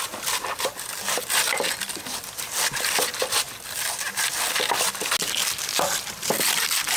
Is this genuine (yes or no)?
yes